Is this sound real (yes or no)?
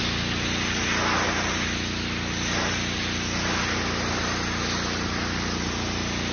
yes